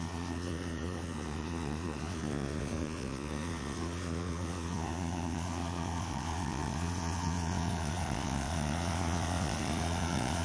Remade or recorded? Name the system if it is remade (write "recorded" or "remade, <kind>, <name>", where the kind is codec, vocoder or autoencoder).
remade, vocoder, Vocos